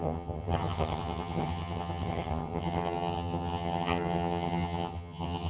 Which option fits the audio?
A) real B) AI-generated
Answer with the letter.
B